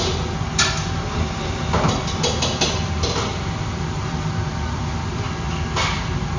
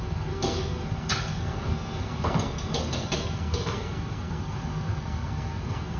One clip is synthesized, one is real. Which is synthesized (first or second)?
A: second